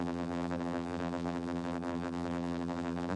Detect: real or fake fake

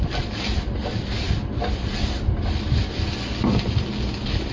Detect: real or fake real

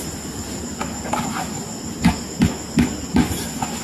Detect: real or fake real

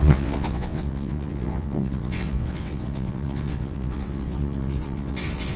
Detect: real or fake fake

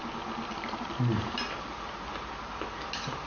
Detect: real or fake real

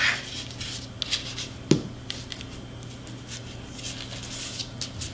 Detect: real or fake real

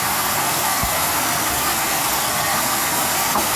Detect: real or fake fake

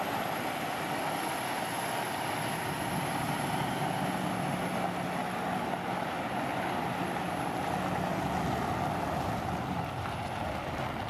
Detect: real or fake real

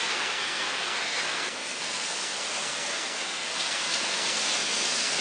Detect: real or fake fake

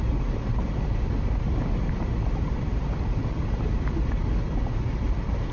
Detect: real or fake real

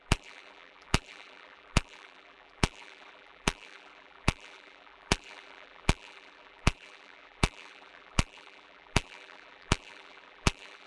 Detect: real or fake fake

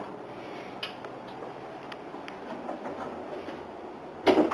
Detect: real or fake real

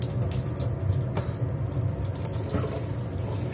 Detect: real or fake real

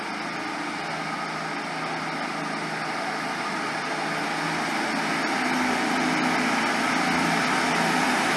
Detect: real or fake real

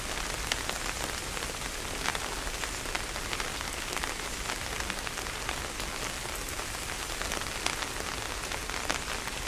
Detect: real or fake real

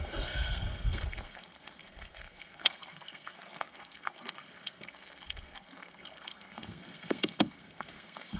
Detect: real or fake fake